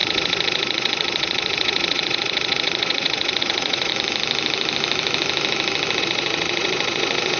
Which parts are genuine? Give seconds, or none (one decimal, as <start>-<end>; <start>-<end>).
3.9-6.0